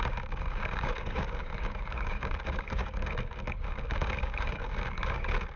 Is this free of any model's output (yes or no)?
no